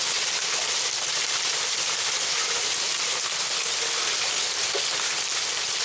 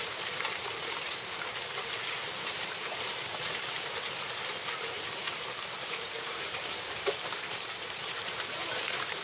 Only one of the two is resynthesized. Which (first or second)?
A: second